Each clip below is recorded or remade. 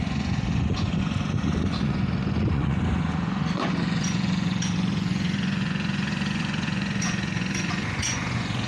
remade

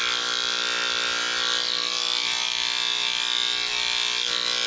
recorded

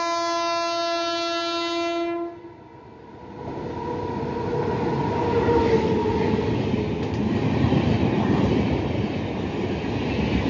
recorded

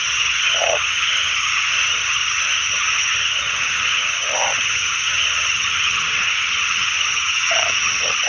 remade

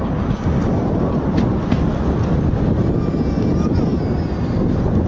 recorded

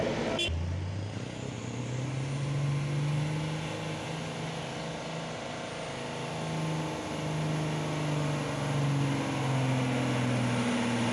recorded